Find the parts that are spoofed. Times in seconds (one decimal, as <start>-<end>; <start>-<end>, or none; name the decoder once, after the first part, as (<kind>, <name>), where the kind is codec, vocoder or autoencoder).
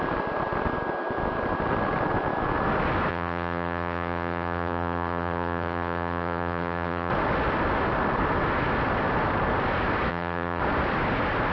3.1-7.1 (vocoder, HiFi-GAN); 10.1-10.6